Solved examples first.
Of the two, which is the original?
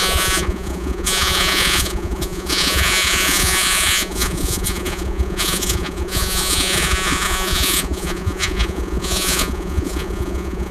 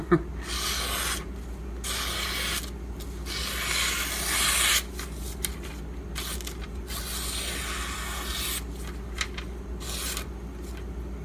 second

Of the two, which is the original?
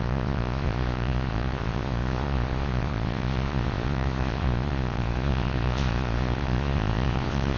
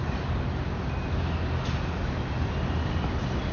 second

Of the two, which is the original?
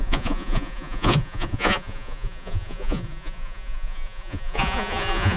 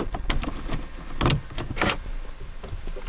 second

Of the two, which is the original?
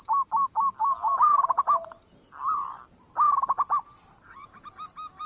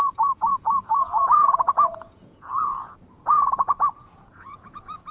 first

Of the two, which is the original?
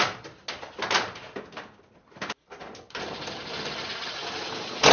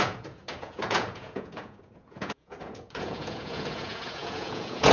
first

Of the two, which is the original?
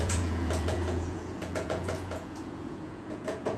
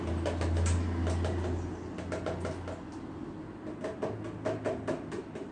second